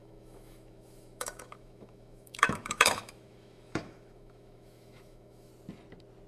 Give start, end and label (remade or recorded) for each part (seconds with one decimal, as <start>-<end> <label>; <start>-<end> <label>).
0.0-5.5 remade; 5.5-6.3 recorded